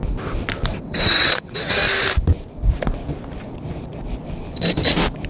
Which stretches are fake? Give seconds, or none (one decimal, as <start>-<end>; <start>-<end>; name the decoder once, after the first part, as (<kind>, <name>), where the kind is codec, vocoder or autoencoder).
0.7-1.8 (vocoder, WaveNeXt)